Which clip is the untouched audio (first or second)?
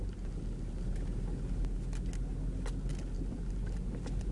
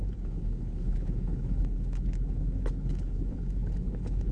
first